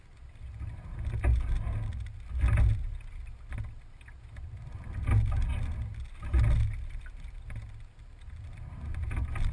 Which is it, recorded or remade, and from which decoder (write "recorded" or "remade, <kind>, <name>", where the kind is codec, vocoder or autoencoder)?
recorded